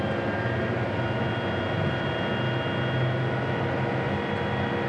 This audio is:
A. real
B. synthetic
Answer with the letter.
A